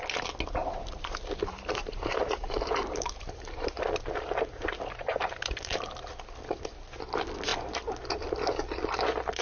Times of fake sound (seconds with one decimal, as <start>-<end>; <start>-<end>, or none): 0.6-5.8